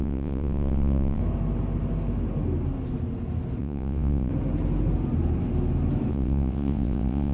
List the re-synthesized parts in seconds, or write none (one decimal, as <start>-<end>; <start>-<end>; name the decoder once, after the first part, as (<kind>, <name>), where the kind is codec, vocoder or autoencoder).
0.0-1.2 (vocoder, WaveNeXt); 3.6-4.3; 6.1-7.3